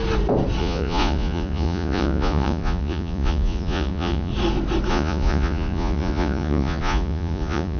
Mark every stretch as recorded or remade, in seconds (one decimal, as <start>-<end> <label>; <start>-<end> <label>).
0.0-0.6 recorded; 0.6-4.3 remade; 4.3-4.9 recorded; 4.9-7.8 remade